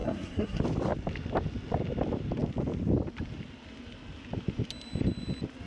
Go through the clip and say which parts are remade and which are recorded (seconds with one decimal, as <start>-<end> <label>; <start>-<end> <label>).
0.0-0.6 remade; 0.6-5.7 recorded